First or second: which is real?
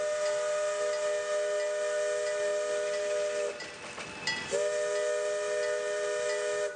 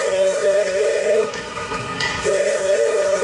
first